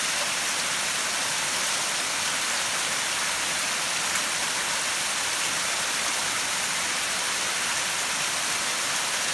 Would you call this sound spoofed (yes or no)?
no